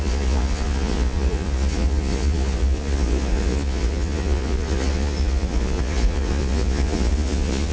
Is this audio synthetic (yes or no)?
yes